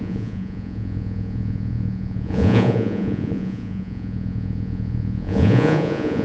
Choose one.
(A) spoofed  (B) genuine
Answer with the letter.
A